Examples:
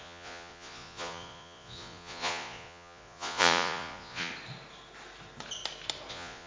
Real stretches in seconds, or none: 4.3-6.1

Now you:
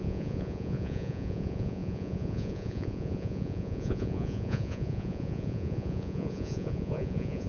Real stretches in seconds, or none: none

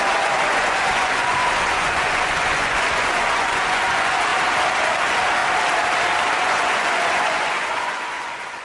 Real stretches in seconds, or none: 4.3-4.9; 5.4-6.4

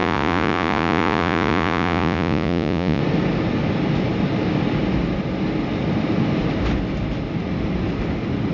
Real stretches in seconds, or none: 3.0-8.5

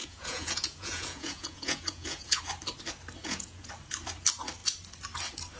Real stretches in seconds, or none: 2.4-3.2; 3.7-5.6

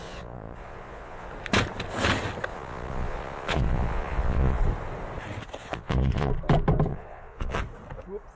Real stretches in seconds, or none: 1.3-2.5; 4.6-5.6; 6.3-6.9; 7.6-8.4